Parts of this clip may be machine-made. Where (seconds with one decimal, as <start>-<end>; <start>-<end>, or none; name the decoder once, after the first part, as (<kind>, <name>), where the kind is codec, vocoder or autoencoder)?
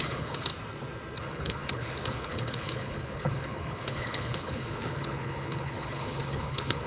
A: 0.0-0.5 (codec, HILCodec); 1.2-6.9